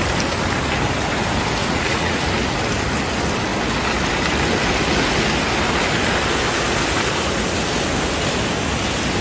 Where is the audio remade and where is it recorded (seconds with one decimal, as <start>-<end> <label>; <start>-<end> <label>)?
0.0-1.6 recorded; 1.6-2.3 remade; 2.3-9.2 recorded